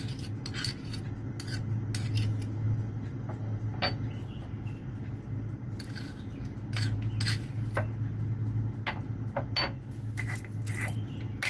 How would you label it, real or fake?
real